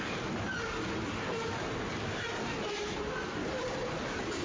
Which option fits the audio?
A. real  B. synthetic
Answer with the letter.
A